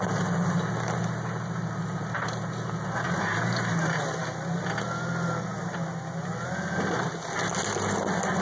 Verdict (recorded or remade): recorded